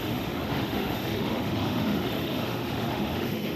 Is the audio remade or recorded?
remade